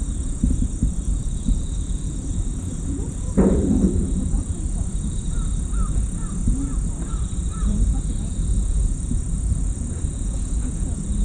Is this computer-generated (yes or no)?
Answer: yes